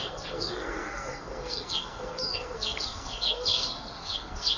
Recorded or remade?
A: remade